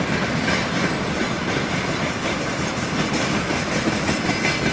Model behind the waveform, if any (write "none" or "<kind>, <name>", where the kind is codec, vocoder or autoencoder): none